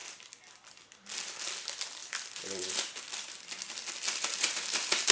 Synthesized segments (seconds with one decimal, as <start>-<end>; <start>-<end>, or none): 2.0-5.1